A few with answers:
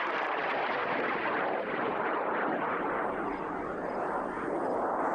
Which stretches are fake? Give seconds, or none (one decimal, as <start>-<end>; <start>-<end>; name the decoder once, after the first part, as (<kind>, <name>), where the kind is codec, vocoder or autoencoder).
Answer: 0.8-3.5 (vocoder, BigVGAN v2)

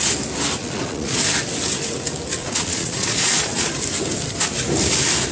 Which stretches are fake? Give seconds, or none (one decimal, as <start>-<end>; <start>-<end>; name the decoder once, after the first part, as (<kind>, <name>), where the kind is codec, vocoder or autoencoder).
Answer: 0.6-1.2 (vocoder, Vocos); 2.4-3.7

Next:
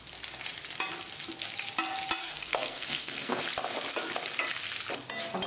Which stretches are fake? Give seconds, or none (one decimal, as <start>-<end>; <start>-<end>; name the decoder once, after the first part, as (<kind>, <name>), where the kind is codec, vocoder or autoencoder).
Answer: 2.2-3.4 (codec, SNAC)